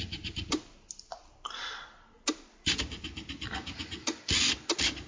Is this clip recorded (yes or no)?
yes